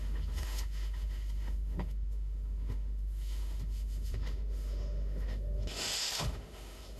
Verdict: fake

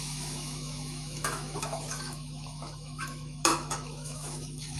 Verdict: fake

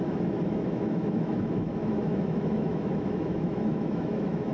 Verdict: fake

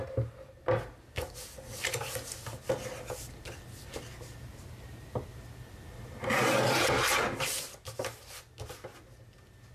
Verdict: real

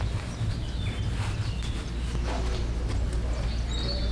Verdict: real